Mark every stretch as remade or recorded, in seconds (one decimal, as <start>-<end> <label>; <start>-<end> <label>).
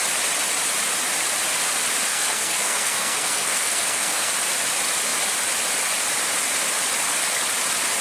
0.0-2.1 recorded; 2.1-4.3 remade; 4.3-8.0 recorded